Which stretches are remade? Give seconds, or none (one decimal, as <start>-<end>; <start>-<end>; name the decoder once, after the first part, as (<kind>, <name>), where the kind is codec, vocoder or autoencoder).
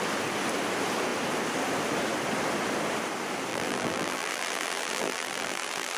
3.5-6.0 (vocoder, BigVGAN v2)